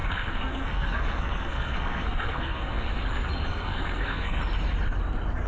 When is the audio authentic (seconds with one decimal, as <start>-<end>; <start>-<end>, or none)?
2.9-3.5; 4.4-5.5